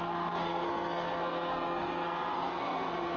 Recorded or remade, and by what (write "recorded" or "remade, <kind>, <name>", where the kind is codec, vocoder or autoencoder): remade, codec, SNAC